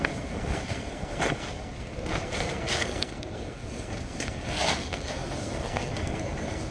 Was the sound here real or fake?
fake